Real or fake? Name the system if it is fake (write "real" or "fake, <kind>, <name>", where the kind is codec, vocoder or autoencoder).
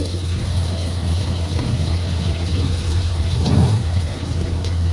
fake, codec, SNAC